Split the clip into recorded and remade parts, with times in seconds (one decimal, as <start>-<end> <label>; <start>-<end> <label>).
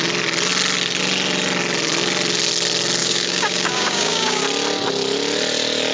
0.0-3.0 recorded; 3.0-4.4 remade; 4.4-5.9 recorded